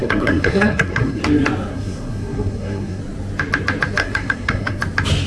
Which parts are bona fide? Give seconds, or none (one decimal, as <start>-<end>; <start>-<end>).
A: 1.2-1.7; 3.0-4.0; 4.8-5.3